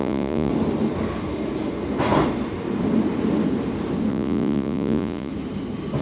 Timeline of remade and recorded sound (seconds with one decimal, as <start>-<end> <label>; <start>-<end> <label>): 0.0-0.5 remade; 0.5-4.1 recorded; 4.1-5.3 remade; 5.3-6.0 recorded